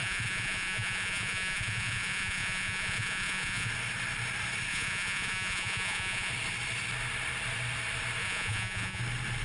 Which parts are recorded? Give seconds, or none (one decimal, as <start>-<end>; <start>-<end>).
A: 3.7-4.7; 6.3-8.2; 9.0-9.4